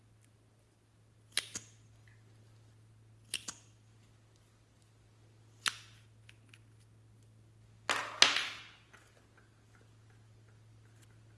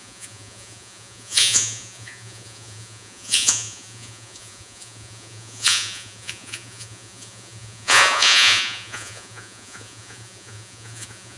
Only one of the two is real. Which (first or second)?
first